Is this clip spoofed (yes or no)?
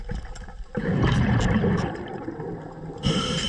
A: yes